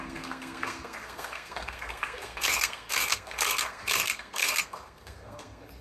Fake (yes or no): yes